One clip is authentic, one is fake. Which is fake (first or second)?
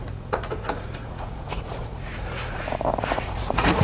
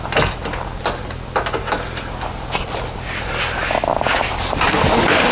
first